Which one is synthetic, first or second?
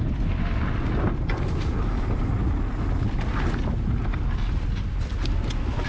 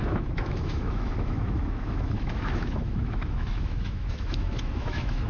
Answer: second